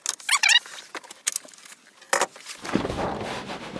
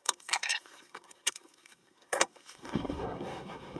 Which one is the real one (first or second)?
first